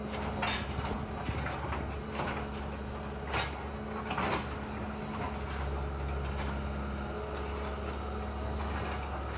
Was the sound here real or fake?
real